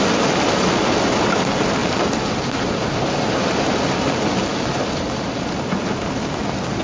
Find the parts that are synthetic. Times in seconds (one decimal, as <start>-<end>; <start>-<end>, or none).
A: none